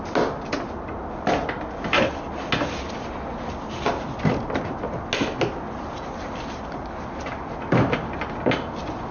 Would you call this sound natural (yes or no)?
yes